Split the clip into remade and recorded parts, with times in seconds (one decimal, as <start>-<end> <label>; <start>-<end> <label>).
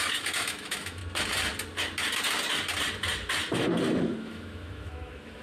0.0-1.0 remade; 1.0-4.2 recorded; 4.2-5.4 remade